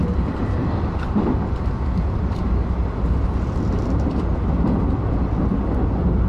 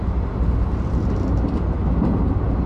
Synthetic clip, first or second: first